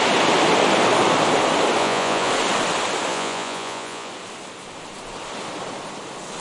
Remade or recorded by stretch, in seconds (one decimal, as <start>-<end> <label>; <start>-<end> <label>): 0.0-1.8 recorded; 1.8-2.3 remade; 2.3-3.1 recorded; 3.1-4.1 remade; 4.1-6.4 recorded